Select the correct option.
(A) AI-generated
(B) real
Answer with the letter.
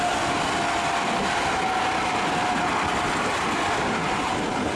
B